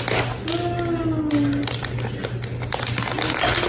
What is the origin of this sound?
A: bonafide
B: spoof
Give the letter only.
A